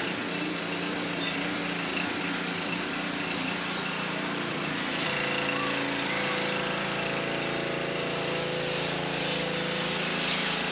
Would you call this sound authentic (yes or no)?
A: yes